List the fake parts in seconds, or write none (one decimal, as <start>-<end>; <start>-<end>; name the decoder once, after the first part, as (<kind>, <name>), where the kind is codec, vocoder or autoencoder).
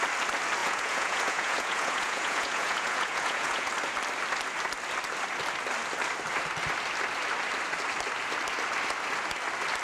0.6-3.7 (vocoder, Vocos)